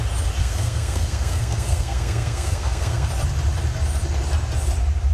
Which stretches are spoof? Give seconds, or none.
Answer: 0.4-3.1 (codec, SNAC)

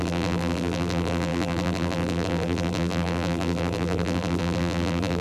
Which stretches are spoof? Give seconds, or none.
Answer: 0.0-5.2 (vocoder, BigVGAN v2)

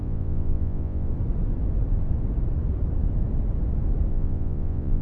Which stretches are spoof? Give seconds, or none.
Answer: 0.0-1.1 (vocoder, Vocos); 4.1-5.0

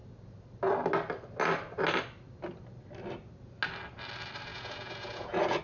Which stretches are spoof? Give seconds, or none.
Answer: 4.5-5.6 (vocoder, Vocos)

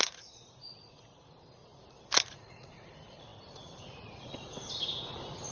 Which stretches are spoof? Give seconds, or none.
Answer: 0.0-1.6 (vocoder, Vocos); 2.2-5.5

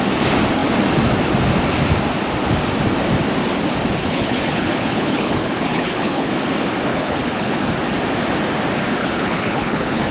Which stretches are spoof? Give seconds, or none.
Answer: 4.0-6.3 (codec, HILCodec); 6.9-7.6; 9.0-10.1